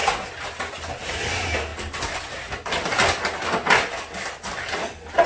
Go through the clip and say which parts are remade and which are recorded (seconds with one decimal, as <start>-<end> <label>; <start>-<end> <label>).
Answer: 0.0-5.3 recorded